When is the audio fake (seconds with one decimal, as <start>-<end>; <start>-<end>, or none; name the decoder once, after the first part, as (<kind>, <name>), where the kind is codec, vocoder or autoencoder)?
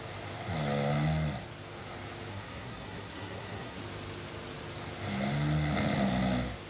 2.3-3.8 (codec, SNAC)